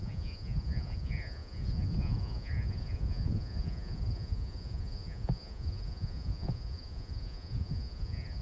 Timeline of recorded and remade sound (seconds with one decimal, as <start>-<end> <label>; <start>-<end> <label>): 0.0-8.4 remade